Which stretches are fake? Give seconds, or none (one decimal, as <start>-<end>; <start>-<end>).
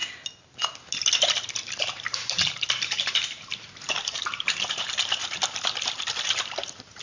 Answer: 1.5-5.2; 6.2-7.0